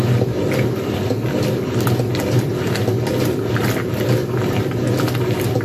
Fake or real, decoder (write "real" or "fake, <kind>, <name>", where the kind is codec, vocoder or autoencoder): fake, vocoder, BigVGAN v2